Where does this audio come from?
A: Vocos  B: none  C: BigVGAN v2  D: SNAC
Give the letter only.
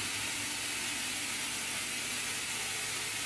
B